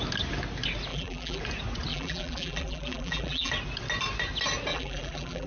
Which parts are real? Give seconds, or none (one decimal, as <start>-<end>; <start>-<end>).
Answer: 0.0-0.9; 1.4-1.9; 3.5-4.7